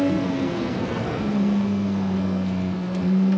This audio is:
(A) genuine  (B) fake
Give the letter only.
B